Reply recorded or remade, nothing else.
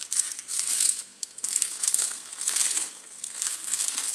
remade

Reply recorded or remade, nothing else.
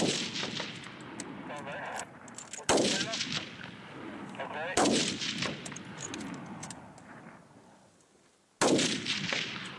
recorded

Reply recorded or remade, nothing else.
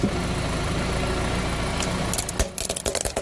recorded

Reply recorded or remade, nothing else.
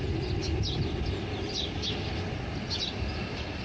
recorded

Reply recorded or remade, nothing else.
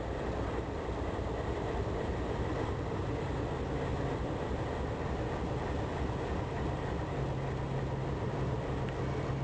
recorded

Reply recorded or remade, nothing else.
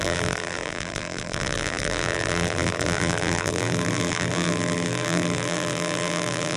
remade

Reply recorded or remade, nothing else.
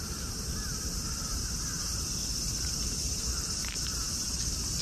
remade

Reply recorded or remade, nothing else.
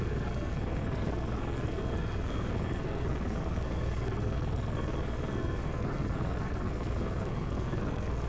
remade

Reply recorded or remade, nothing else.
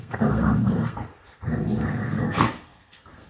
remade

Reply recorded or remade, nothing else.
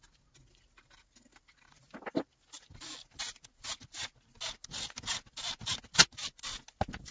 recorded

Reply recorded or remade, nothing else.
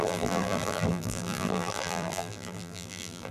remade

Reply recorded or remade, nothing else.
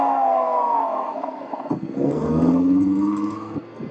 remade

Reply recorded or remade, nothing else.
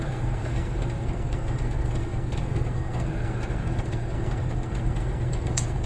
remade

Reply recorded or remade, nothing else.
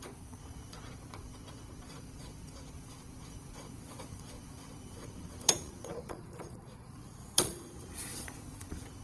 remade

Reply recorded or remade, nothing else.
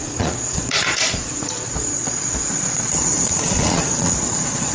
remade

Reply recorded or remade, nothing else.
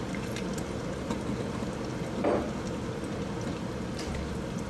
recorded